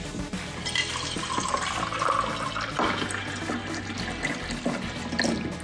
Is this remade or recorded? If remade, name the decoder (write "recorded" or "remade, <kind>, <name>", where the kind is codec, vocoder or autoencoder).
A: recorded